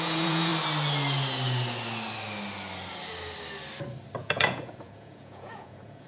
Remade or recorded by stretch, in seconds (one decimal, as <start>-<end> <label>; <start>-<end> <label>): 0.0-0.5 remade; 0.5-4.2 recorded; 4.2-6.1 remade